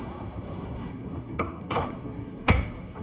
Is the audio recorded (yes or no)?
no